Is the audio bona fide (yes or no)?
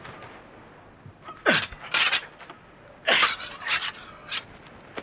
yes